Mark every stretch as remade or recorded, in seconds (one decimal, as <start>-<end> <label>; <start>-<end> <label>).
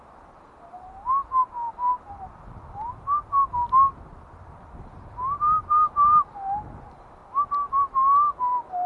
0.0-8.9 recorded